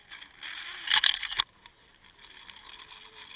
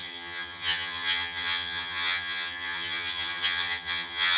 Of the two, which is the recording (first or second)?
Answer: first